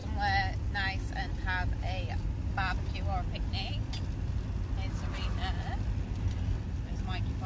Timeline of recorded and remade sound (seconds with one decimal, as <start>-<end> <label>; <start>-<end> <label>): 0.0-7.5 recorded